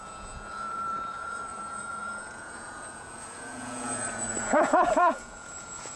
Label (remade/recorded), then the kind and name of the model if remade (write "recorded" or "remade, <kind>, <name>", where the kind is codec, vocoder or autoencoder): remade, vocoder, Vocos